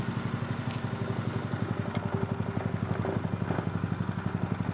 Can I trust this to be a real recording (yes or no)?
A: yes